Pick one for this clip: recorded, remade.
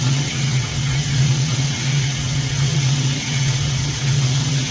remade